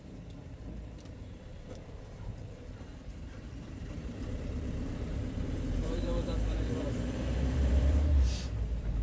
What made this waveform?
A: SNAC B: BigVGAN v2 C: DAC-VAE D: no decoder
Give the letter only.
B